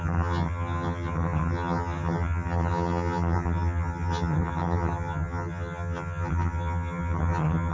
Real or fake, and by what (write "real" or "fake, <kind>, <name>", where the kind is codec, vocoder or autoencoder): fake, vocoder, HiFi-GAN